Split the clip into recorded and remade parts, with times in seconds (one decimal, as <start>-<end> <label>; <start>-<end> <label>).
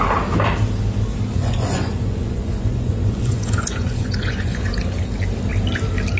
0.0-1.3 recorded; 1.3-4.7 remade; 4.7-6.2 recorded